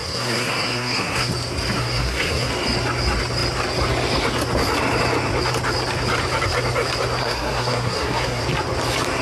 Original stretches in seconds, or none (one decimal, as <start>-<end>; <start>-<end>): 1.3-1.8; 2.5-7.2; 8.4-9.2